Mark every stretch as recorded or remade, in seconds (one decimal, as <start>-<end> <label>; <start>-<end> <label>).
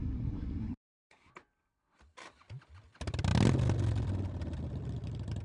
0.0-1.3 remade; 1.3-5.4 recorded